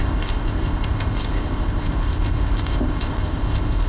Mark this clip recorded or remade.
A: remade